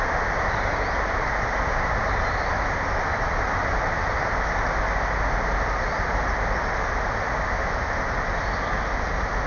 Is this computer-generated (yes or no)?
no